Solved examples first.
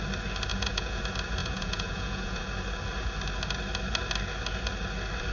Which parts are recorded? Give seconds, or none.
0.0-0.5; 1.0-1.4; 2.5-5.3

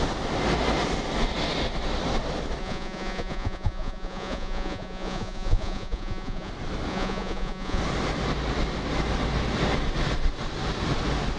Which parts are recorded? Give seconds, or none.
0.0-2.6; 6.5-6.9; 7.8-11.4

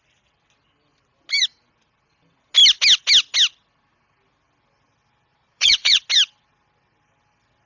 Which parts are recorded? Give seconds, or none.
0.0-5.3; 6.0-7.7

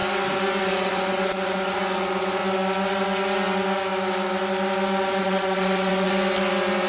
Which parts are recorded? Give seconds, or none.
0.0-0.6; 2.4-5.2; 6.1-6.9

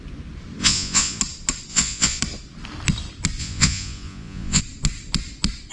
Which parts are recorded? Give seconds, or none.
0.0-0.6; 1.2-1.7; 2.2-3.4; 4.6-5.7

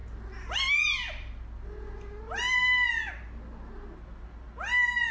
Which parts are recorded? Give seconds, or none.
0.0-5.1

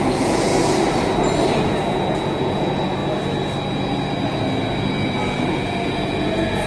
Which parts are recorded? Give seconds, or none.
0.5-2.1; 3.0-5.5

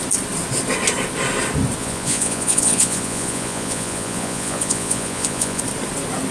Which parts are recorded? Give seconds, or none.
0.0-1.8; 5.6-6.3